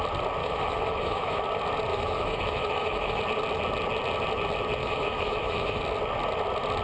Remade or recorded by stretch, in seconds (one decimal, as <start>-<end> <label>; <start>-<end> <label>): 0.0-0.4 recorded; 0.4-1.4 remade; 1.4-1.9 recorded; 1.9-3.2 remade; 3.2-4.8 recorded; 4.8-5.8 remade; 5.8-6.8 recorded